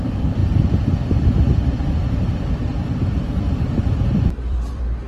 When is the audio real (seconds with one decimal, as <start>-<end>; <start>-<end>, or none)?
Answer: 0.4-2.2; 2.6-3.9